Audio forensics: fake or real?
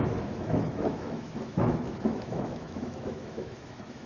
fake